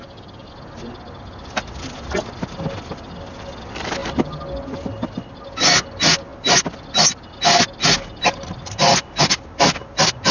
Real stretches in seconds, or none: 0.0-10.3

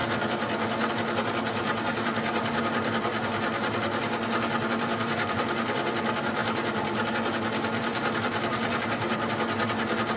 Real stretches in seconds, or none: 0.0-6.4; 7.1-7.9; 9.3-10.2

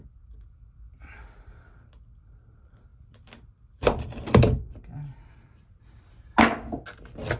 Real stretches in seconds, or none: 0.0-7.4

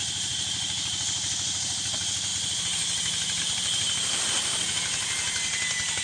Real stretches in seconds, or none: 0.0-6.0